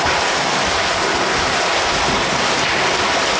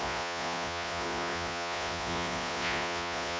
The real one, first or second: first